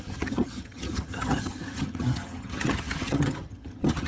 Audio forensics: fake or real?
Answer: fake